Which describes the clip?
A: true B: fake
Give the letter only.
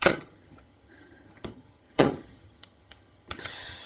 B